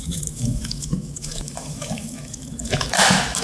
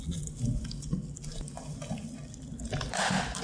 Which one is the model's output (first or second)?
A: first